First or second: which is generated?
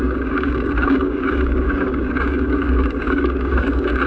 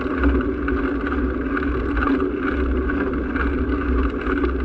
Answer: first